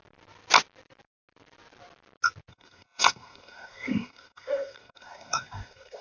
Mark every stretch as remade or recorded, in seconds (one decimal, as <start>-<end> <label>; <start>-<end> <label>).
0.0-2.5 recorded; 2.5-6.0 remade